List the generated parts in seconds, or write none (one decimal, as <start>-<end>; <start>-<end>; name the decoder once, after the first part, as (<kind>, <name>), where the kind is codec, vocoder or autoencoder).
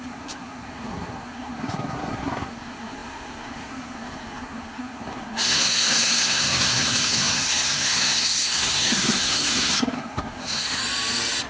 0.0-10.8 (codec, SNAC)